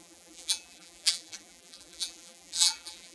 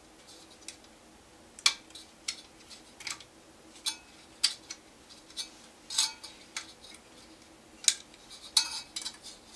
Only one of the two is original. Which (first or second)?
second